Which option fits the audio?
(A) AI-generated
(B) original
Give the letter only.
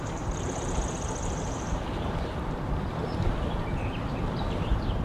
A